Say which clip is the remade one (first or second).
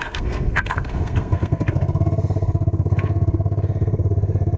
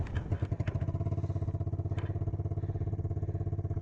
first